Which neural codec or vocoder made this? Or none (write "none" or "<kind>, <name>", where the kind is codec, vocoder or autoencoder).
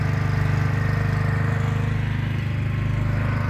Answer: none